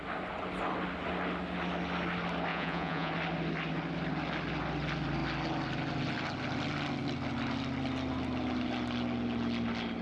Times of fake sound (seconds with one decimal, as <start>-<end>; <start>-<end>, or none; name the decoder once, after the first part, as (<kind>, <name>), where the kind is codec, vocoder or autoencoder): 2.5-3.1 (vocoder, Vocos)